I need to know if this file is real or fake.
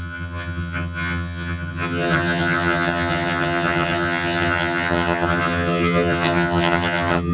fake